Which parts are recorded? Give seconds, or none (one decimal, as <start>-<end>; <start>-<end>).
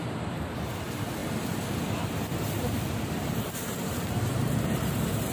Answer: none